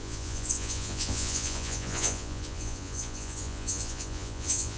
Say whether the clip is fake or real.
fake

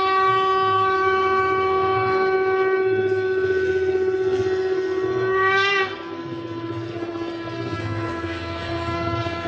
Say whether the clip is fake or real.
fake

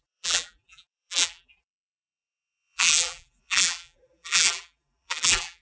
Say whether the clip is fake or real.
fake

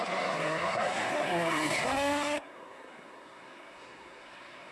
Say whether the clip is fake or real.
fake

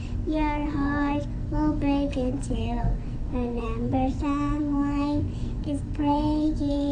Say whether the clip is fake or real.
fake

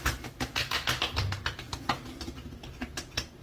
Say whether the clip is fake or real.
real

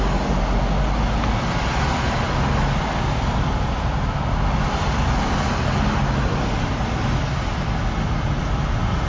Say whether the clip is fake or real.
real